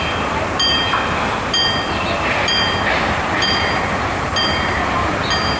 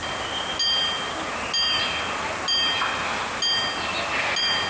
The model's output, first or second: first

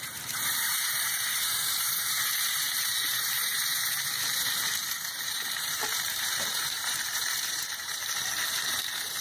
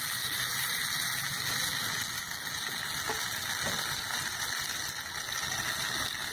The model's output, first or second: first